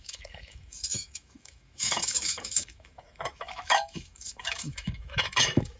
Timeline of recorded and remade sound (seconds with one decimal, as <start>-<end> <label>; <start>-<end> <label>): 0.0-5.8 remade